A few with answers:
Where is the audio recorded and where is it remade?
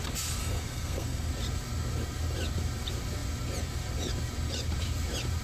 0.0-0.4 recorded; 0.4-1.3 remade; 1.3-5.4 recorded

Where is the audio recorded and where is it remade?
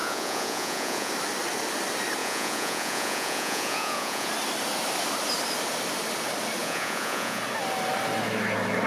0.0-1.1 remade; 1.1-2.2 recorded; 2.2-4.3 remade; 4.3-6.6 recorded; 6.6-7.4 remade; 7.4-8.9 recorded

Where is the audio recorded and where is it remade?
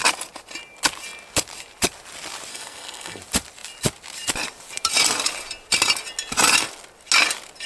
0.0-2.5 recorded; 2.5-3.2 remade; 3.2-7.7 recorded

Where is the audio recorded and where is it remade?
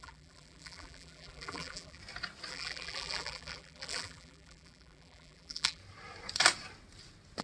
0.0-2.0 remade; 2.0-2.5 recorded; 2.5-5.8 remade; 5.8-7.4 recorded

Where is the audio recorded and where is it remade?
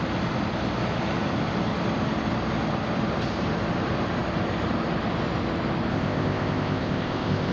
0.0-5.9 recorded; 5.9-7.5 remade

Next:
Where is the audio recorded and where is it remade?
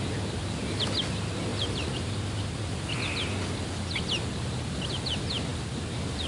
0.0-1.5 recorded; 1.5-2.4 remade; 2.4-6.3 recorded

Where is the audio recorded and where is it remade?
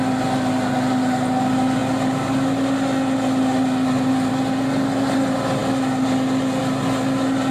0.0-7.5 recorded